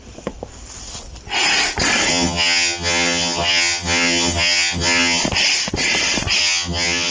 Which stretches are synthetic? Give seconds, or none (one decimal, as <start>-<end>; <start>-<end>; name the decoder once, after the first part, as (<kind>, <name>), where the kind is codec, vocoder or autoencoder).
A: 2.1-5.2 (vocoder, HiFi-GAN); 6.4-7.1